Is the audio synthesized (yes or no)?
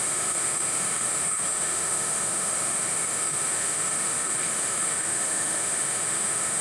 yes